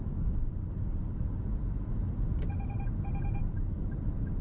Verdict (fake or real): fake